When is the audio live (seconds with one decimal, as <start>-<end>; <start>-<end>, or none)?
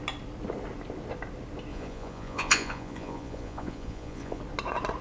0.0-1.7; 4.4-5.0